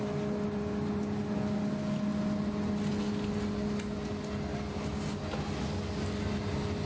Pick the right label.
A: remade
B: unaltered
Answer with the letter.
B